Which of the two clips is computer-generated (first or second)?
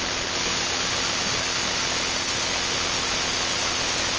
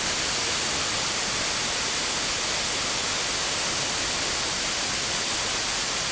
first